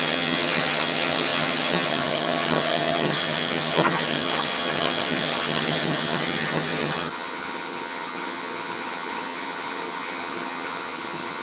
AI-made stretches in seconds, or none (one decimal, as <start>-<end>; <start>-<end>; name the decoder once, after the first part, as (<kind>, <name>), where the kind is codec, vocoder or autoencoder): 0.0-11.4 (vocoder, HiFi-GAN)